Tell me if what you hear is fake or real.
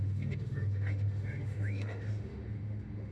fake